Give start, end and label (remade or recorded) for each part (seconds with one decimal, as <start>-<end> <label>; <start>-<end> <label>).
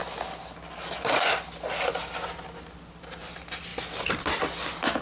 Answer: 0.0-5.0 recorded